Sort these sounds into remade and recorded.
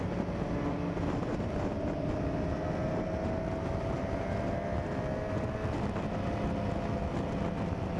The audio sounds recorded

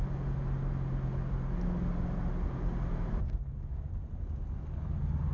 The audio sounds recorded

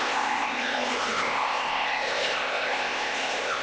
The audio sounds remade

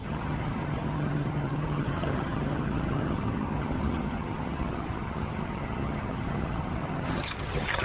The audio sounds remade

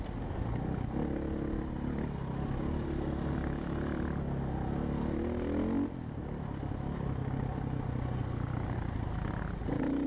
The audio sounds recorded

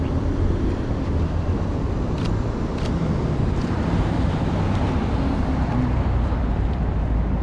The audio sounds remade